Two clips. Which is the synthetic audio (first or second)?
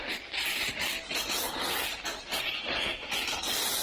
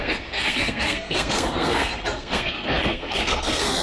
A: second